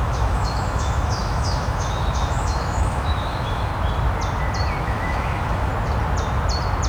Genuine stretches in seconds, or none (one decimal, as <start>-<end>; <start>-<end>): 3.7-4.8; 5.7-6.9